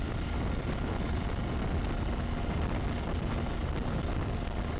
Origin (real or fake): real